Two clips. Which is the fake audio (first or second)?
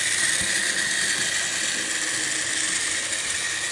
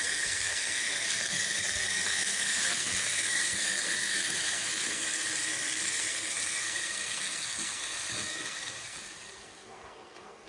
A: second